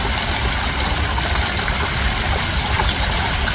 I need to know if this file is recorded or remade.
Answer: recorded